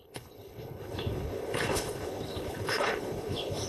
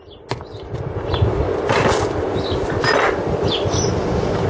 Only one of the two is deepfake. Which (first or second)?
first